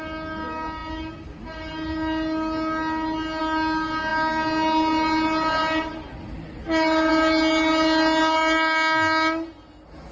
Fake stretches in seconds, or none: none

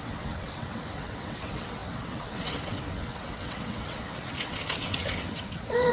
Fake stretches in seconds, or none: 0.0-5.9 (vocoder, WaveNeXt)

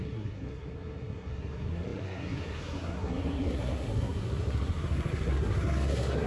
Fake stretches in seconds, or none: 0.0-6.3 (codec, SNAC)

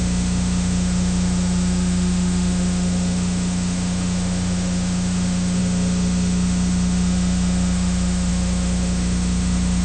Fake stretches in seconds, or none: 0.0-9.8 (autoencoder, DAC-VAE)

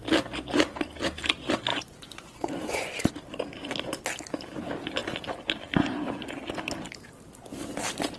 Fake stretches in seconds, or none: 1.7-3.1 (vocoder, Vocos)